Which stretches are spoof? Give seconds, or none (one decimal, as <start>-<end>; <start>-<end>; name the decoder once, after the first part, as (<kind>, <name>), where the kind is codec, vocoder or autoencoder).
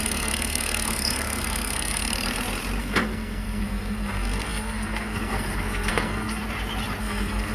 0.0-2.0 (codec, SNAC); 2.8-6.4; 7.0-7.5